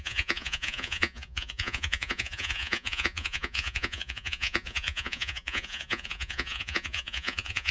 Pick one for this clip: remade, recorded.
remade